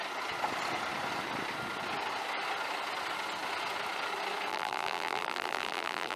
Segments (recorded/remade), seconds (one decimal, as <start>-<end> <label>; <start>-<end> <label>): 0.0-4.5 recorded; 4.5-6.2 remade